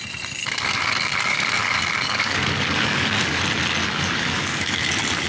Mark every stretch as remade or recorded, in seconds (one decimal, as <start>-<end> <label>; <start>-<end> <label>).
0.0-0.4 recorded; 0.4-3.4 remade; 3.4-3.8 recorded; 3.8-4.8 remade; 4.8-5.3 recorded